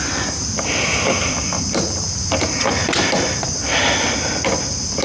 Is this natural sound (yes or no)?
yes